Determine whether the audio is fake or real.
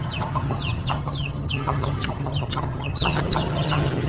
fake